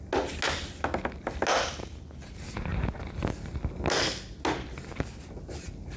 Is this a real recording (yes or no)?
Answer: yes